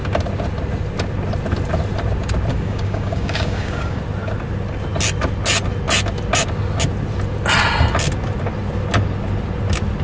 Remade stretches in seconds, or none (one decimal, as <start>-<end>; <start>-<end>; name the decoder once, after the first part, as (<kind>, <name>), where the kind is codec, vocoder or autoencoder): 2.5-4.0 (codec, DAC)